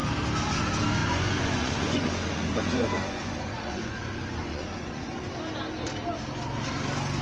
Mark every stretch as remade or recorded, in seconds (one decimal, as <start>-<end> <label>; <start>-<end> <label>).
0.0-1.0 recorded; 1.0-5.3 remade; 5.3-7.2 recorded